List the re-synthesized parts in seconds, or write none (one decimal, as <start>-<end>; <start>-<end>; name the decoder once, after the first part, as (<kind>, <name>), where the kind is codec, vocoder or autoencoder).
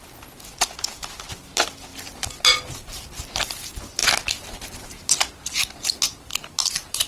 4.0-5.1 (vocoder, BigVGAN v2); 6.6-7.1